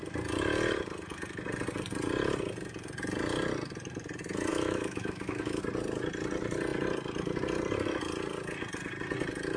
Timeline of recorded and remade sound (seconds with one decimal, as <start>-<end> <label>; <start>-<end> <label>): 0.0-4.5 recorded; 4.5-5.6 remade; 5.6-9.6 recorded